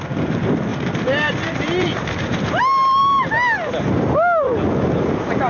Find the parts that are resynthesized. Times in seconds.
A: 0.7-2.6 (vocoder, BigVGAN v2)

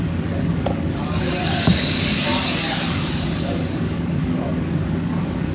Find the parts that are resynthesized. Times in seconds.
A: 0.0-5.5 (codec, DAC)

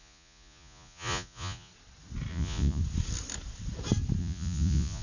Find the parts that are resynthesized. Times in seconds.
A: 0.0-1.7 (vocoder, Vocos); 2.3-2.8; 4.2-5.0

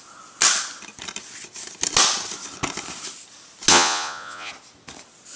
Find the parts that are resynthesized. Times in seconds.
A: 3.7-4.5 (vocoder, Vocos)

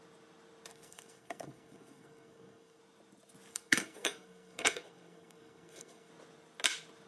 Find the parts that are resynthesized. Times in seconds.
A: 0.7-2.8 (codec, SNAC); 3.5-6.1

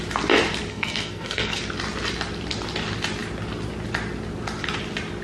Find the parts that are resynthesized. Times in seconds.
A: 0.7-1.6 (codec, SNAC)

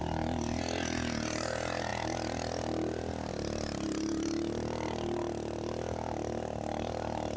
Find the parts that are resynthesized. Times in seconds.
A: none

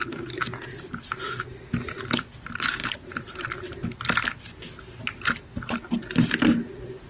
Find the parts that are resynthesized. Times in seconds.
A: none